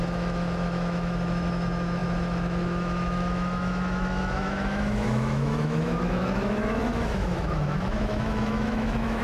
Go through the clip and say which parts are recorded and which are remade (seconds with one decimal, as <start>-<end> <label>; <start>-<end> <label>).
0.0-9.2 remade